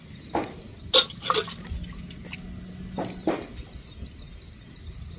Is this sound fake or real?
real